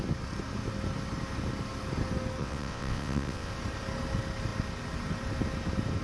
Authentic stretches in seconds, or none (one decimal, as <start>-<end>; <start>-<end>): 0.0-2.4; 3.5-6.0